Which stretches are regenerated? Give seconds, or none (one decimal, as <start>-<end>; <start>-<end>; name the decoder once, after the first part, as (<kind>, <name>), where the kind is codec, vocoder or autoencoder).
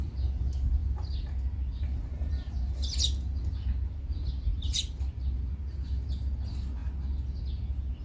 none